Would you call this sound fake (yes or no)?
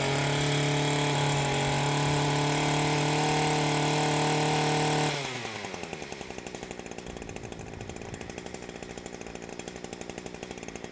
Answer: no